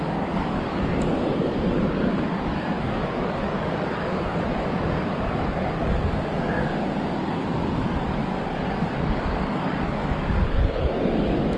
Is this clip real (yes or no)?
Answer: no